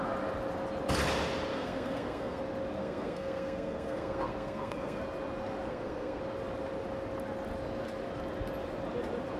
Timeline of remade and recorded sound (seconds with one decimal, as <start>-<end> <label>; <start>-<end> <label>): 0.0-1.5 recorded; 1.5-2.4 remade; 2.4-2.8 recorded; 2.8-5.0 remade; 5.0-5.7 recorded; 5.7-6.2 remade; 6.2-9.4 recorded